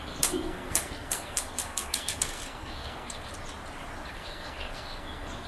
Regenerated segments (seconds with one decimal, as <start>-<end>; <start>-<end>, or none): 0.0-3.3; 4.1-5.5